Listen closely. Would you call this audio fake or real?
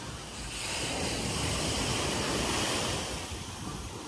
real